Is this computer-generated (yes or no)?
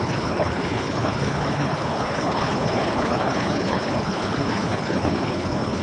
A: yes